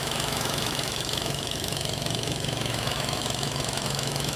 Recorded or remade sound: remade